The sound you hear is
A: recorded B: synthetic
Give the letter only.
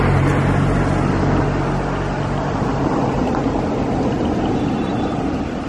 A